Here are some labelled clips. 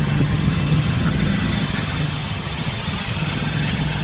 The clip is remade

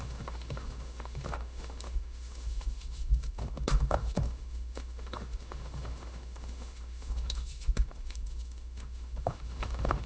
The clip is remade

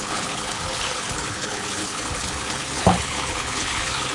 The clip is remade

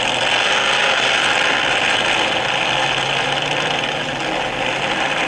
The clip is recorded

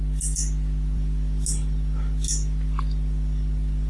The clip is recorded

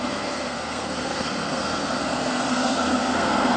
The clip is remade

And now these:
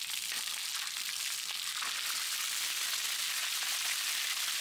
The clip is recorded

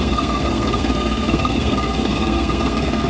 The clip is remade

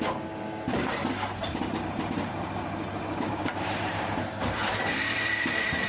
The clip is remade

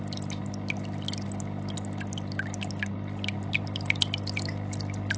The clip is recorded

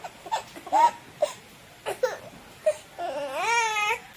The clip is recorded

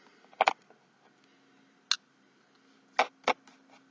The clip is recorded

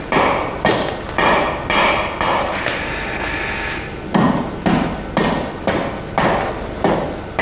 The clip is recorded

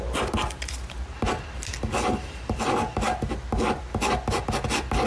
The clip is recorded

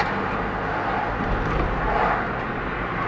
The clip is recorded